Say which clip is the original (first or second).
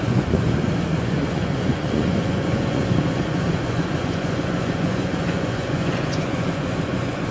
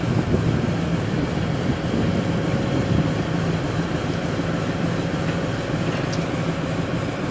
second